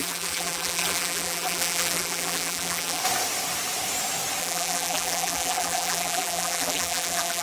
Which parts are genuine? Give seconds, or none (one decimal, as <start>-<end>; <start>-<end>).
3.0-4.4